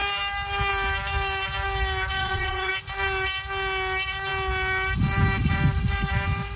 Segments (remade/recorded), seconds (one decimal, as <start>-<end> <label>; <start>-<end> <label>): 0.0-2.2 recorded; 2.2-2.7 remade; 2.7-6.6 recorded